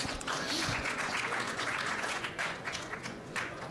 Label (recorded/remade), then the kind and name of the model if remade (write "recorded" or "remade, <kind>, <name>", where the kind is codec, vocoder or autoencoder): remade, vocoder, Vocos